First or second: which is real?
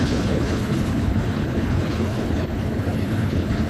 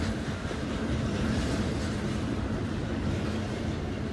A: second